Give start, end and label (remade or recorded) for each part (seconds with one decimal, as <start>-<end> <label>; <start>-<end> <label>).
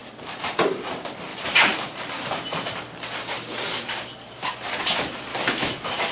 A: 0.0-5.3 recorded; 5.3-6.1 remade